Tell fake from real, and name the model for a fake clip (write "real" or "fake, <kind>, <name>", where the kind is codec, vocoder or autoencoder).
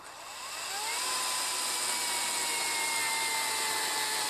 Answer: real